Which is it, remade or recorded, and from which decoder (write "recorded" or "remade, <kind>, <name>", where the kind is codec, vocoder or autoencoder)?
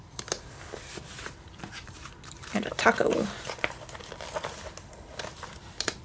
remade, vocoder, BigVGAN v2